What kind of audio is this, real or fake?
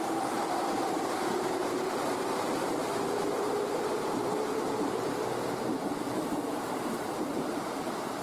fake